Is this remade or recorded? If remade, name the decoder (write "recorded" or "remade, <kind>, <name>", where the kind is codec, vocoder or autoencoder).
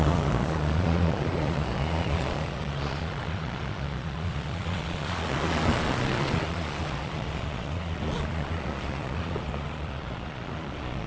remade, vocoder, Vocos